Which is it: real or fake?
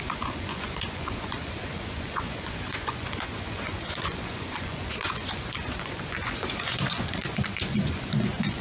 fake